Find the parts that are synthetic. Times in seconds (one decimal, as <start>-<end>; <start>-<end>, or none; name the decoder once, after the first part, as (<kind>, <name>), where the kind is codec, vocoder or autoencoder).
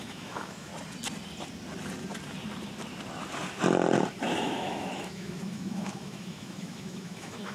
0.0-0.7 (autoencoder, DAC-VAE); 4.4-7.5